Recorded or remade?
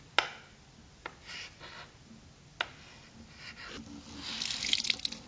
recorded